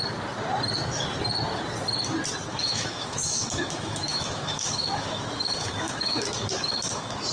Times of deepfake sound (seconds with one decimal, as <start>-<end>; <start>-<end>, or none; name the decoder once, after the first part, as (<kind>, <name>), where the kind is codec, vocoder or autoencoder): 2.5-7.3 (autoencoder, DAC-VAE)